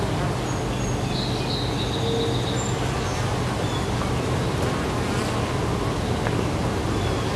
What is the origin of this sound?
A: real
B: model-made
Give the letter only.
A